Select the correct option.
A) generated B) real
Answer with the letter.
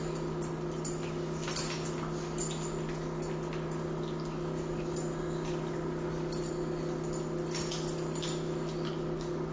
B